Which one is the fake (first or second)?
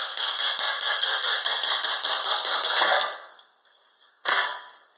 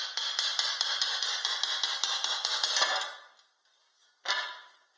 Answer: first